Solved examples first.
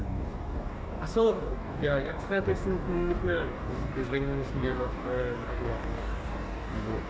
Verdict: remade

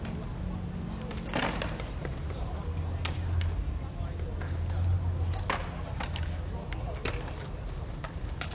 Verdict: recorded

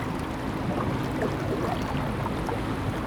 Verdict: recorded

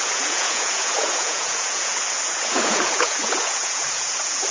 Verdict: remade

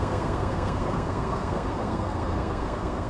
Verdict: remade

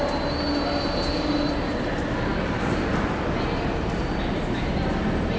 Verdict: recorded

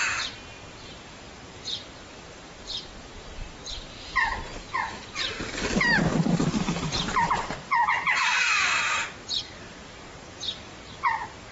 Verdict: remade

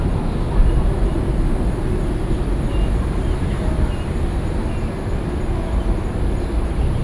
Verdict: recorded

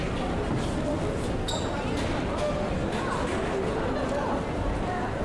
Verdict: recorded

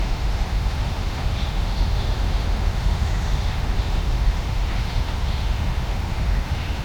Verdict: remade